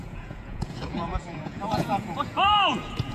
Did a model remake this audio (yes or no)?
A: yes